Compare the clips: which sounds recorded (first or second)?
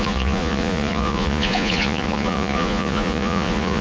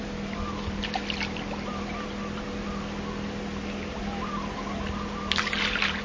second